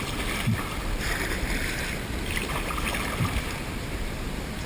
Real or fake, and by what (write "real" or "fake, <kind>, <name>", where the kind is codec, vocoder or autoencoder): real